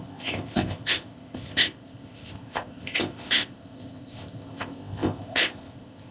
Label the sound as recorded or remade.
remade